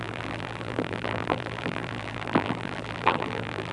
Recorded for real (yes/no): no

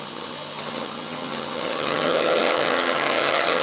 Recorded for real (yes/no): no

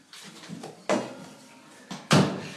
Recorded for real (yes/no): yes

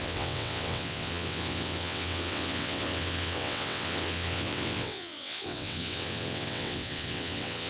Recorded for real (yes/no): no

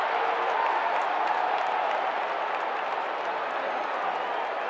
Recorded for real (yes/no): yes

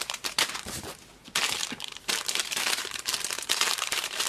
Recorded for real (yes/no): no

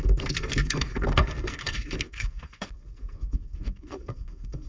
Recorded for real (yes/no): no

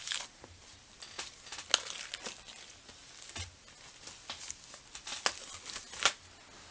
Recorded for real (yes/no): yes